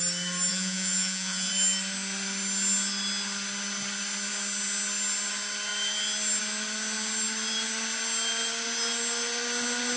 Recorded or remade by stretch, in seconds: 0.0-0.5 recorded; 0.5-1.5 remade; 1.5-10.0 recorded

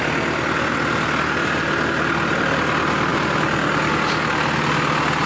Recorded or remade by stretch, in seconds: 0.0-5.3 recorded

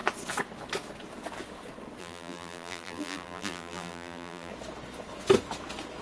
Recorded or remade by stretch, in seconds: 0.0-2.0 recorded; 2.0-4.5 remade; 4.5-6.0 recorded

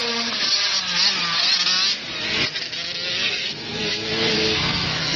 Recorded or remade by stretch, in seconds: 0.0-3.1 recorded; 3.1-5.2 remade

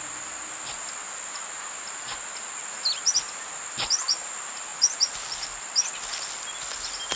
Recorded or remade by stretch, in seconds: 0.0-7.2 recorded

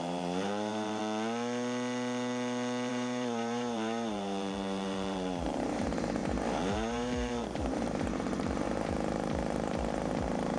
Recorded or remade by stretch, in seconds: 0.0-1.0 remade; 1.0-2.9 recorded; 2.9-10.6 remade

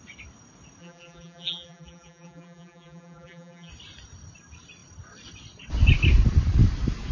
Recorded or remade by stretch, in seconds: 0.0-0.8 recorded; 0.8-3.7 remade; 3.7-7.1 recorded

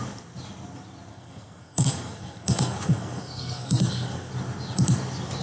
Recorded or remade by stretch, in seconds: 0.0-1.1 recorded; 1.1-4.3 remade; 4.3-5.4 recorded